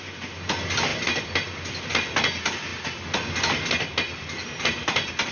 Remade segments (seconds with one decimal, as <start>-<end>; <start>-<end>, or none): none